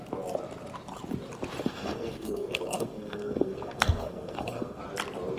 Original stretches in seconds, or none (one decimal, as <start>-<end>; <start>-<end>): 0.0-1.6; 4.8-5.4